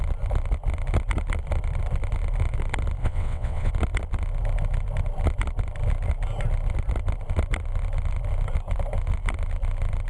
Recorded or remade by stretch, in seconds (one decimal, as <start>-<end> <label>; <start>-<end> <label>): 0.0-3.0 recorded; 3.0-3.7 remade; 3.7-10.1 recorded